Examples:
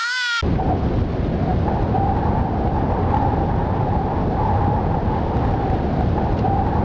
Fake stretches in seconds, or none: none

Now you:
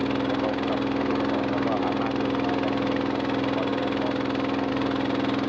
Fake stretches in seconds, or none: none

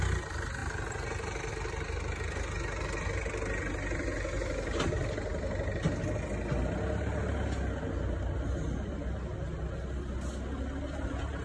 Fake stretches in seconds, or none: none

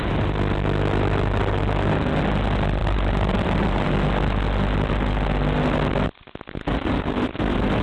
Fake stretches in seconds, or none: 2.8-3.9 (vocoder, BigVGAN v2)